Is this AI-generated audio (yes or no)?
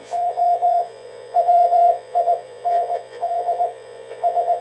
yes